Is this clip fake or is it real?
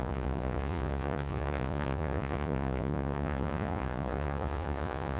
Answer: fake